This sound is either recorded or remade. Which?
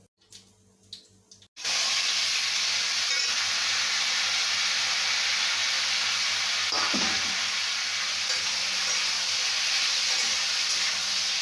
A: recorded